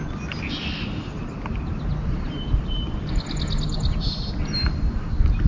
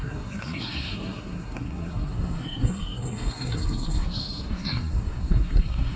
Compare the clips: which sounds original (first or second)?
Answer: first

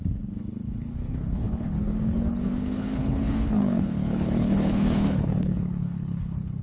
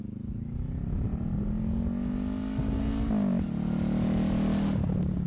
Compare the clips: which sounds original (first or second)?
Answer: second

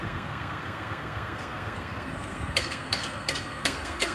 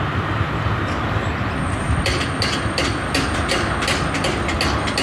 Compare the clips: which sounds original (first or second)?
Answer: second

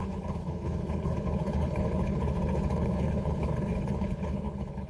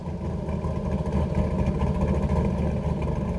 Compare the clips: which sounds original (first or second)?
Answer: second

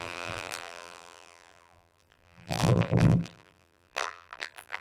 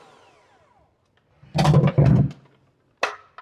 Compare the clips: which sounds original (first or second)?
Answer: second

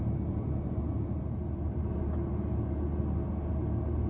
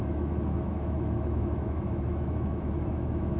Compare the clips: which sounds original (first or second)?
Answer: first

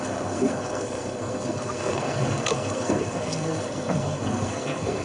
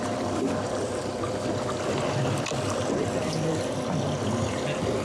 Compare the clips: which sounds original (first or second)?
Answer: second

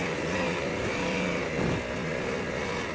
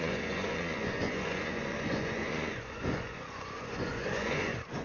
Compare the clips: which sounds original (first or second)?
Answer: first